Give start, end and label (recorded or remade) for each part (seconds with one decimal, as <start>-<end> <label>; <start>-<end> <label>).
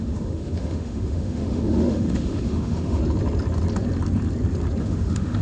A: 0.0-3.0 remade; 3.0-4.8 recorded; 4.8-5.4 remade